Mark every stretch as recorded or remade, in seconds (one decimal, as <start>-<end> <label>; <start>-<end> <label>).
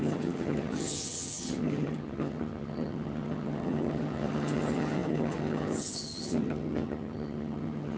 0.0-8.0 remade